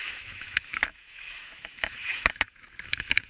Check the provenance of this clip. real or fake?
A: fake